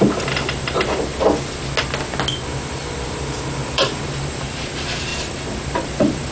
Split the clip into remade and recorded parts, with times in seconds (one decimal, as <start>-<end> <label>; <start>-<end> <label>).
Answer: 0.0-3.6 recorded; 3.6-4.4 remade; 4.4-5.1 recorded; 5.1-6.3 remade